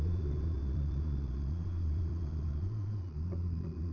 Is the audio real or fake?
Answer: fake